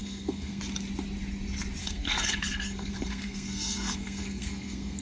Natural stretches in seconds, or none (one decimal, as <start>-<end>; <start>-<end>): 0.6-1.8

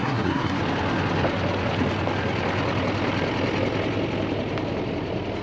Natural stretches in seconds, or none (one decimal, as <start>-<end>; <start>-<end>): 0.6-5.4

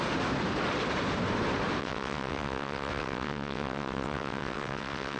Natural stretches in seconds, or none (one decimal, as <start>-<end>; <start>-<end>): 0.0-1.8

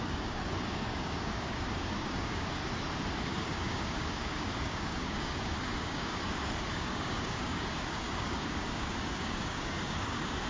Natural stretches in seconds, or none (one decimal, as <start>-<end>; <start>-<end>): 2.6-3.2

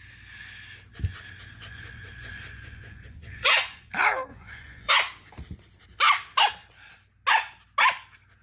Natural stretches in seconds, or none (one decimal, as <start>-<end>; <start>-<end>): 0.0-1.5; 3.9-4.3; 4.9-8.4